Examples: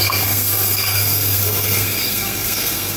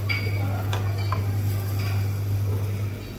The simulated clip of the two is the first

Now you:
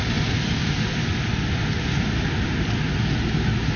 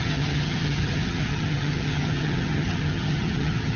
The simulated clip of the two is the second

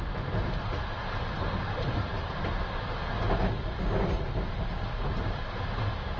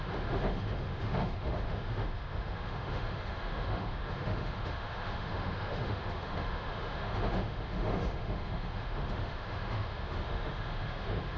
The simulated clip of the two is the second